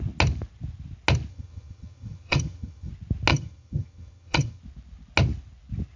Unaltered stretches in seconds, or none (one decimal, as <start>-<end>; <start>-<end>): 0.0-1.3; 2.9-3.3; 4.6-6.0